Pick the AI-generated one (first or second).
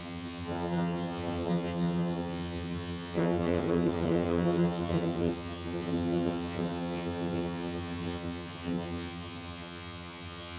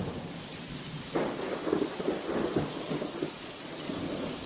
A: first